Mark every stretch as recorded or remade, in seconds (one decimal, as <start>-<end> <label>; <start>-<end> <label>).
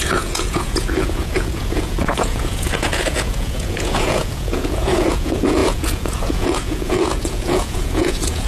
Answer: 0.0-8.5 remade